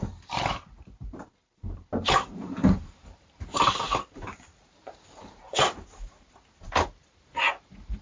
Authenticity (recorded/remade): remade